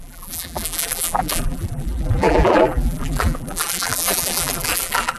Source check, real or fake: fake